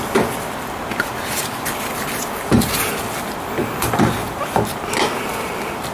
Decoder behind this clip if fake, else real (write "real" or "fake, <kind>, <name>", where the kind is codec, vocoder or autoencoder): real